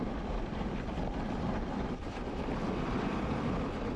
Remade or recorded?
remade